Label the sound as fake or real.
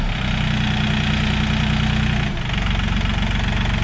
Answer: real